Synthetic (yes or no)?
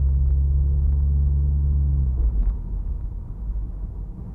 no